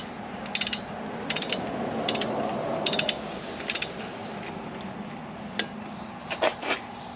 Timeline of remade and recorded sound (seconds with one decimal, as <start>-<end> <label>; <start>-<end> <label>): 0.0-7.2 recorded